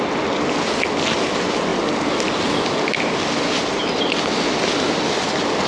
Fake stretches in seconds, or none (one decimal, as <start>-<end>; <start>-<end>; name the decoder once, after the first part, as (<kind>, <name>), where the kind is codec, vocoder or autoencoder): none